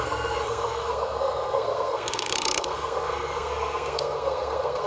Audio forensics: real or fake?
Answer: fake